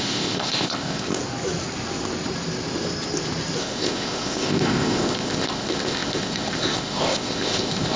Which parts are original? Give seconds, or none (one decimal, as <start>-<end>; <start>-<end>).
1.2-3.6